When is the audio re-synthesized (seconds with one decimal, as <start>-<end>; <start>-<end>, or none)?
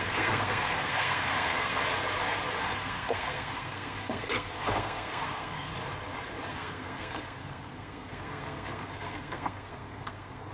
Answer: 0.0-1.8; 2.6-5.7; 6.5-10.5